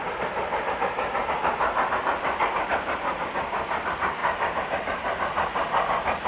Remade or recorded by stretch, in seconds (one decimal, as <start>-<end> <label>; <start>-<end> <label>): 0.0-6.3 recorded